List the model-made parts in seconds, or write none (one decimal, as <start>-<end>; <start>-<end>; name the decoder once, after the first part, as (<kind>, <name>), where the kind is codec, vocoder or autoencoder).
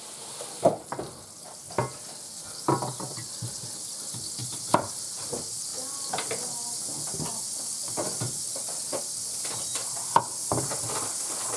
4.4-5.0 (vocoder, BigVGAN v2)